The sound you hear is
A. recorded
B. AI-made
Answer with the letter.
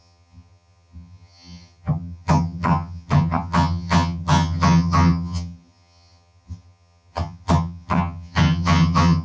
B